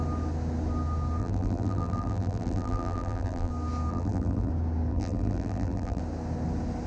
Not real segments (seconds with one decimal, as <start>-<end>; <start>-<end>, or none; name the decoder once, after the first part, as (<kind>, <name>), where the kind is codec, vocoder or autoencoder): 1.2-3.5 (vocoder, BigVGAN v2); 3.9-4.5; 4.9-6.0